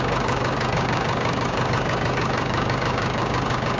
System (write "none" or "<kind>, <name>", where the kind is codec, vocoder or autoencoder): codec, DAC